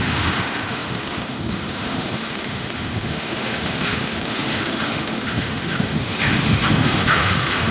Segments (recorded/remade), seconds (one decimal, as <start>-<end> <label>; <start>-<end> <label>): 0.0-7.7 remade